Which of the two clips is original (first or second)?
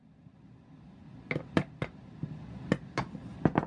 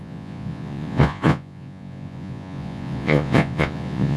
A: first